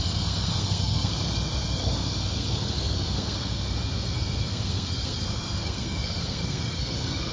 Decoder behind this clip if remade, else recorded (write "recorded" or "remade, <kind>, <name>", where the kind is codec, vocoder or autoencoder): remade, codec, SNAC